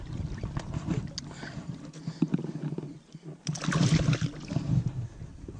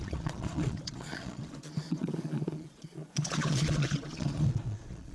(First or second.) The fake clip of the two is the second